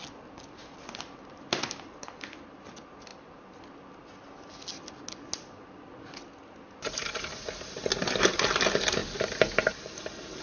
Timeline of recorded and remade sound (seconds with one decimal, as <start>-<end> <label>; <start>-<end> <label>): 0.0-10.4 recorded